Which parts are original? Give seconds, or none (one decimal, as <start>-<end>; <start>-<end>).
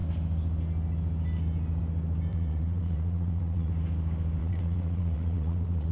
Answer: 0.0-2.3; 3.7-4.4